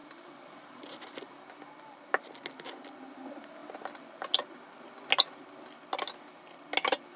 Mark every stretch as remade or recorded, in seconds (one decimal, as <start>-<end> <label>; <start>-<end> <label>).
0.0-7.2 recorded